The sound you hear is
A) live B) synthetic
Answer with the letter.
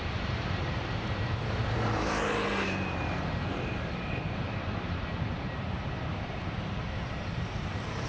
B